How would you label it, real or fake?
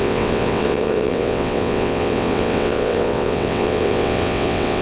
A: fake